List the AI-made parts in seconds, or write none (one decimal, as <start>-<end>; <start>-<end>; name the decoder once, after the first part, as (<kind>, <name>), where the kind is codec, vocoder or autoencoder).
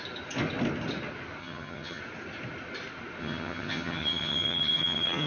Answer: 1.4-2.0 (vocoder, HiFi-GAN); 3.2-5.3